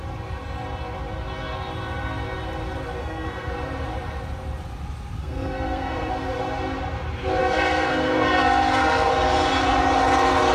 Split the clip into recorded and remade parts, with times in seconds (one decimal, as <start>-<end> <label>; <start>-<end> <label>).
0.0-3.0 recorded; 3.0-3.5 remade; 3.5-5.2 recorded; 5.2-6.1 remade; 6.1-7.4 recorded; 7.4-9.1 remade; 9.1-10.5 recorded